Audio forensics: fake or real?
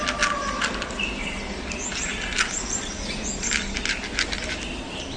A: real